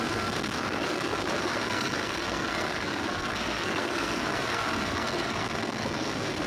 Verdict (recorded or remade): remade